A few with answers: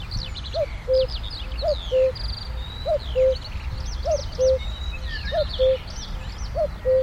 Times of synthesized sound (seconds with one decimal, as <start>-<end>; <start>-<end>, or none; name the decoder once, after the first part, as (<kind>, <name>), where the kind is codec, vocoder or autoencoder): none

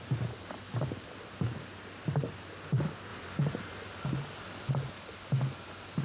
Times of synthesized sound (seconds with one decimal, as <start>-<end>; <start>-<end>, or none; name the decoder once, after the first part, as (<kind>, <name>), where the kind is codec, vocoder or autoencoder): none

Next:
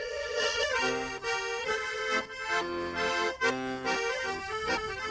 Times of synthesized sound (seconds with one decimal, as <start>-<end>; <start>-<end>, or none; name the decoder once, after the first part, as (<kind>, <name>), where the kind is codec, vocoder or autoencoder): 0.0-0.8 (vocoder, Vocos); 1.6-2.0